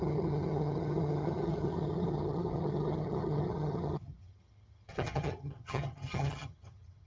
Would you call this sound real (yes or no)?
no